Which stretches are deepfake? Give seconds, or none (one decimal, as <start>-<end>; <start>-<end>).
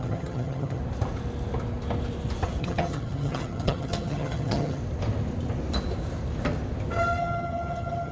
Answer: 0.0-0.8; 2.6-4.8; 7.2-8.1